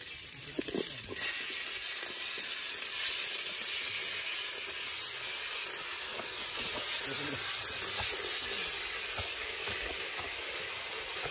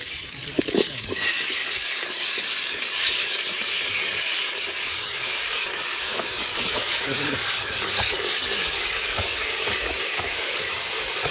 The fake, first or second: second